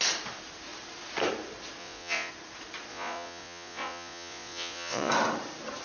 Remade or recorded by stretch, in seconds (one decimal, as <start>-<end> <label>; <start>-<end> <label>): 0.0-1.8 recorded; 1.8-2.3 remade; 2.3-2.9 recorded; 2.9-5.1 remade; 5.1-5.8 recorded